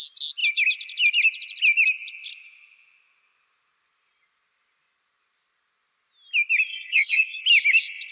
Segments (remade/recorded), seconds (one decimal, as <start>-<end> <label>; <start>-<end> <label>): 0.0-6.7 recorded; 6.7-7.4 remade; 7.4-8.1 recorded